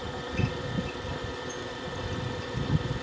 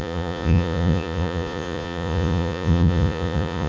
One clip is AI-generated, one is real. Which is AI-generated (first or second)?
second